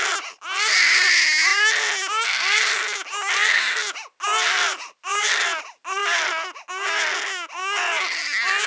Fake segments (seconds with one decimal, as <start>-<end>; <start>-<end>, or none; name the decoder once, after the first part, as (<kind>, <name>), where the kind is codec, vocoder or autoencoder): none